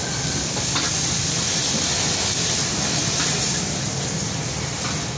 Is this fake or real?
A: real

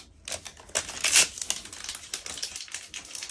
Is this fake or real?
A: real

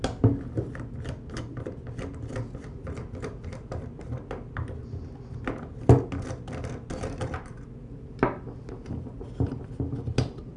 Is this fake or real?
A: real